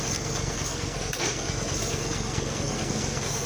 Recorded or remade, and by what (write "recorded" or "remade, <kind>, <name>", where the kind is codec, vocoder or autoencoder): remade, codec, SNAC